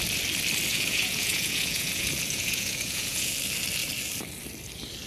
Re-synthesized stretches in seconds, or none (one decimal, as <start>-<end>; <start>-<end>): 0.7-3.3